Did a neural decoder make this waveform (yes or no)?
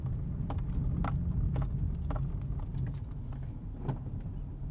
no